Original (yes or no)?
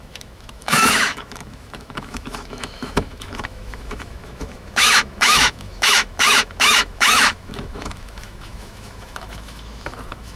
no